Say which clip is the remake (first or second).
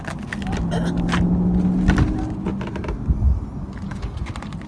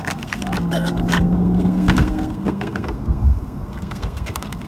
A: second